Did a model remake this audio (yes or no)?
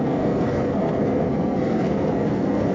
yes